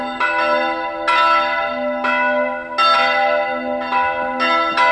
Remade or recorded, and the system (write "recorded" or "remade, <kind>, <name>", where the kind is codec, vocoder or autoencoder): recorded